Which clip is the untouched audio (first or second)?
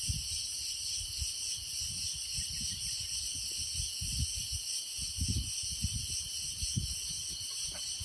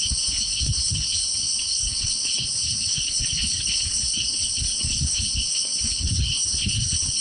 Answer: first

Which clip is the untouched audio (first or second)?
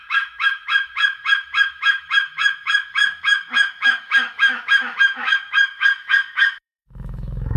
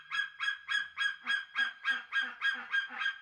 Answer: second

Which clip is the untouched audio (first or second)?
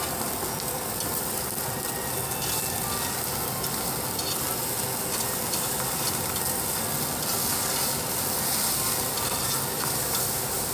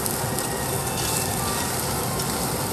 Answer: first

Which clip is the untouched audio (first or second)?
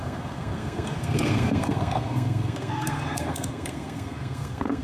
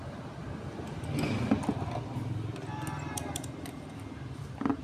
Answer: second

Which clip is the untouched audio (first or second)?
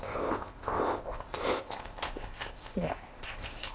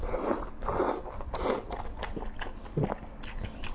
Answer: second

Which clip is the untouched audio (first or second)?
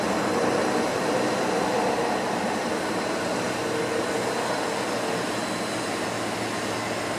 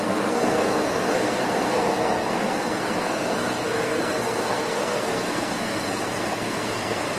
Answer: first